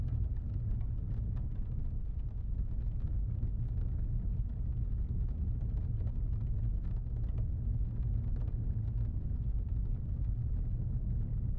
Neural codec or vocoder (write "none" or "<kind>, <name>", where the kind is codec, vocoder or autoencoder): none